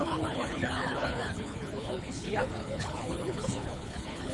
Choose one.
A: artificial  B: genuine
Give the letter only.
A